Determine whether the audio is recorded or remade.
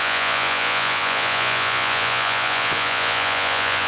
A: remade